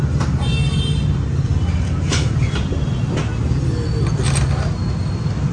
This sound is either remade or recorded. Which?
recorded